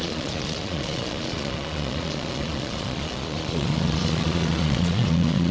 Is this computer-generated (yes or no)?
yes